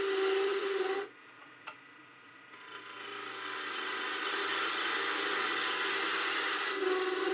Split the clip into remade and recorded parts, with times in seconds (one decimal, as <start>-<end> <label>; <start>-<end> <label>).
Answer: 0.0-0.5 recorded; 0.5-2.4 remade; 2.4-7.3 recorded